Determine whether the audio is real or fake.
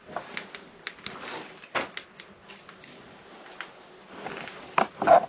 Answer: real